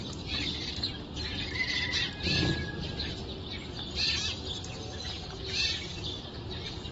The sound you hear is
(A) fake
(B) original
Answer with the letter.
A